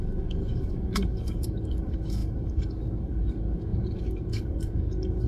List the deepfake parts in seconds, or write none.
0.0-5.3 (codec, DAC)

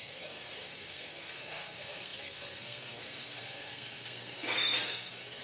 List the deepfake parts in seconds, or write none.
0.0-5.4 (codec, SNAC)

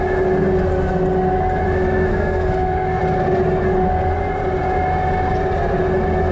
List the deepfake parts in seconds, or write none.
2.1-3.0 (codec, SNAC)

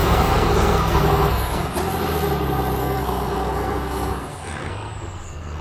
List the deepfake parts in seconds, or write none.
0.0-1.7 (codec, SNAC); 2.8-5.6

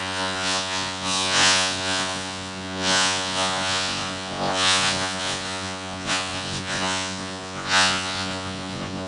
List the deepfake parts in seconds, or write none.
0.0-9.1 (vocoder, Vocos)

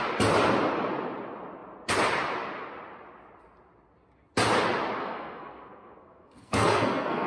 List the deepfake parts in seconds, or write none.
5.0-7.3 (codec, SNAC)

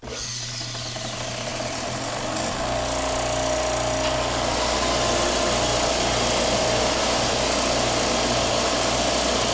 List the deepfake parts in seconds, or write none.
none